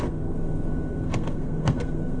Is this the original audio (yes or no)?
no